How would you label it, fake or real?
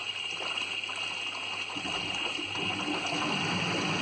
real